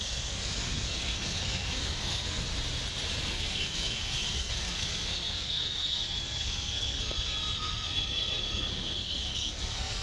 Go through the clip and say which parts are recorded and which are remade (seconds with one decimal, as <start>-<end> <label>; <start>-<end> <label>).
0.0-2.5 remade; 2.5-3.2 recorded; 3.2-10.0 remade